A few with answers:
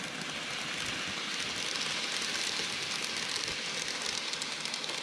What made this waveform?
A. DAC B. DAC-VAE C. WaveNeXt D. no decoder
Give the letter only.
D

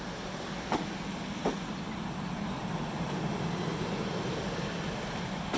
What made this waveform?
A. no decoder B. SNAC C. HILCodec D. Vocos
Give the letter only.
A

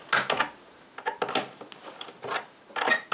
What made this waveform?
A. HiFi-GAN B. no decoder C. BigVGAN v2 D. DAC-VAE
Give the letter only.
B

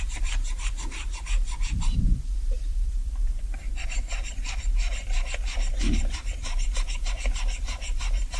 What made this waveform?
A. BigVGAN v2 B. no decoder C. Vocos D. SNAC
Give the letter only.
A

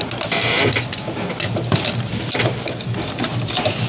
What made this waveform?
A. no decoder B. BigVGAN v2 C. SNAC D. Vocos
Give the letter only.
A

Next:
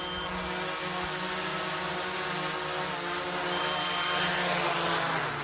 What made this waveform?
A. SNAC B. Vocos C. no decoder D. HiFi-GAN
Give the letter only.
C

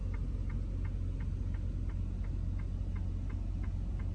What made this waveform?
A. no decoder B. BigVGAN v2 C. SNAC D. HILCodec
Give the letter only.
A